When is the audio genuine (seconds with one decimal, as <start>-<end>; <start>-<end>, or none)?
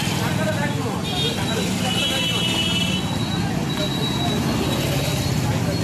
0.0-5.8